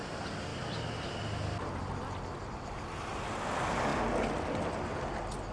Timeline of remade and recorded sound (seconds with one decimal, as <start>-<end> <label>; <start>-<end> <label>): 0.0-5.5 recorded